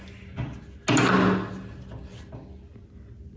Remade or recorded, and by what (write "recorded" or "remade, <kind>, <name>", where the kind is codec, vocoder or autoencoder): recorded